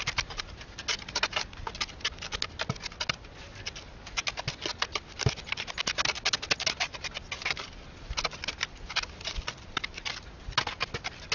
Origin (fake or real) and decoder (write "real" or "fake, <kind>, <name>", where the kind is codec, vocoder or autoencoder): real